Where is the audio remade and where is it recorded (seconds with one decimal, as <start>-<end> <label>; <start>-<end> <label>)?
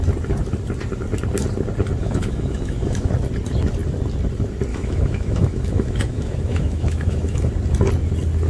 0.0-2.0 recorded; 2.0-3.1 remade; 3.1-4.7 recorded; 4.7-7.5 remade; 7.5-8.5 recorded